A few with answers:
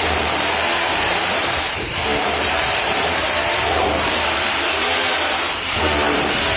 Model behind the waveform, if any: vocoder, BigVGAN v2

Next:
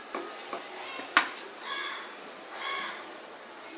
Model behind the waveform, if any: none